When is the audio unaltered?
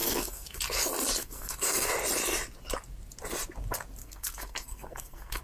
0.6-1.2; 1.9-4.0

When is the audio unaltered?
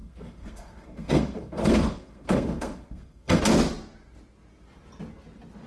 3.4-5.7